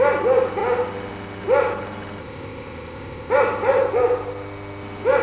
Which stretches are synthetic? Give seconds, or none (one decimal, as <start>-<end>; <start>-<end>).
2.2-3.3